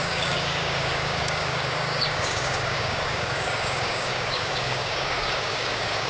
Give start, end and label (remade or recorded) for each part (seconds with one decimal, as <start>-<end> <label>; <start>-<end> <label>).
0.0-6.1 remade